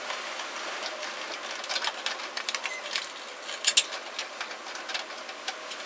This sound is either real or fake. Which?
real